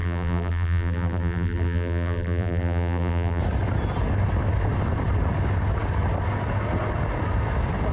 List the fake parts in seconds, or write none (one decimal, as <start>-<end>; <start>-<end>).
0.0-3.4